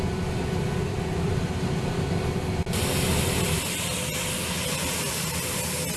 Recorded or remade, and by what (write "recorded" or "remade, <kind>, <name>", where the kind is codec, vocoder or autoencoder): recorded